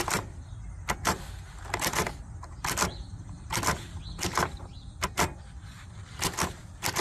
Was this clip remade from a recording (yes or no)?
no